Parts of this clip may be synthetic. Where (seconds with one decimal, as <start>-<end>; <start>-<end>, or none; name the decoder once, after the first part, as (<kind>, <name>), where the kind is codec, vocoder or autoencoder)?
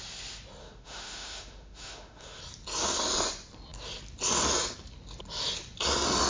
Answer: 0.6-2.4 (autoencoder, DAC-VAE)